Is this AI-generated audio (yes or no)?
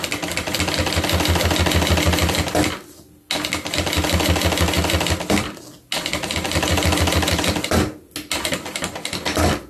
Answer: no